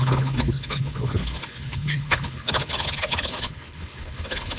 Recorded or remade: remade